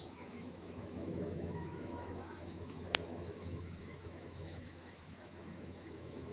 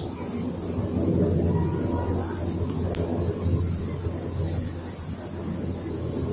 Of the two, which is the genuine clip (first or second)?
second